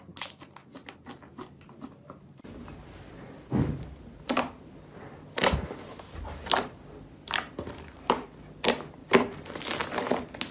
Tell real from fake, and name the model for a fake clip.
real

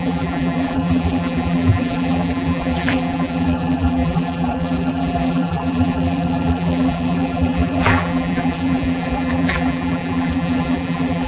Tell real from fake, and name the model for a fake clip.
fake, vocoder, BigVGAN v2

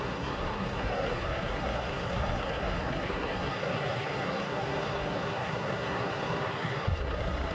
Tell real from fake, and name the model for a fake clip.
fake, codec, SNAC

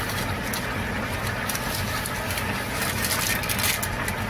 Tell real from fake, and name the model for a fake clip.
real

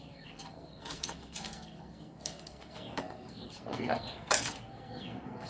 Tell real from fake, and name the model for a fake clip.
fake, codec, SNAC